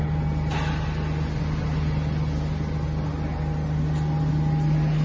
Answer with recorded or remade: recorded